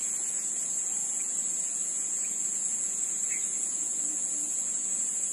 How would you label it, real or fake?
fake